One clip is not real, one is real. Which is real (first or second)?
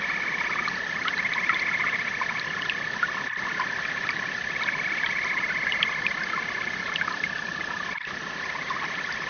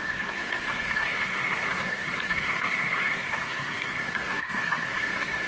first